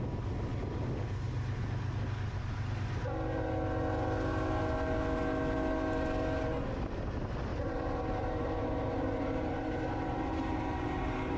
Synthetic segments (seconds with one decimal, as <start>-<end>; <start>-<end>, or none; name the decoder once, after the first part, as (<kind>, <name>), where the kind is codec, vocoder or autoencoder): 7.5-11.4 (vocoder, BigVGAN v2)